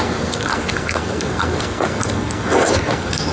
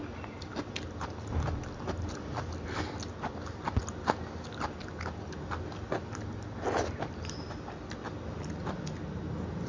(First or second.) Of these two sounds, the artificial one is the first